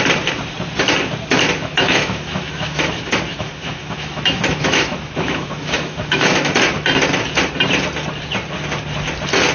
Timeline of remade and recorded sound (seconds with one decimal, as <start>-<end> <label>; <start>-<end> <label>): 0.0-1.6 recorded; 1.6-6.5 remade; 6.5-9.5 recorded